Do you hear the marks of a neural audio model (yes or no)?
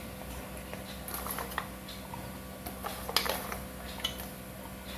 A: no